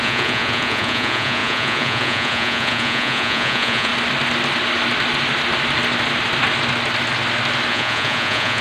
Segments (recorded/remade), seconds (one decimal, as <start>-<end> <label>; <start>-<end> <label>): 0.0-3.9 remade; 3.9-7.7 recorded; 7.7-8.6 remade